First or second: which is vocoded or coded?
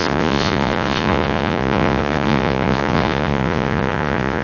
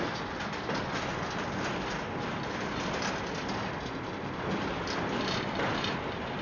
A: first